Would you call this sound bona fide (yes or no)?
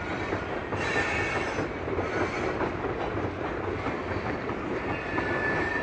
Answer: yes